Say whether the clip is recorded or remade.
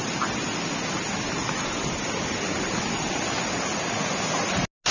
recorded